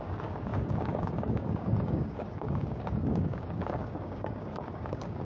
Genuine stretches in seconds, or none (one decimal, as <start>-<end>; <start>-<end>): none